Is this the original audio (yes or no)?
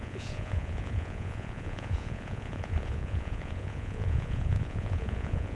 no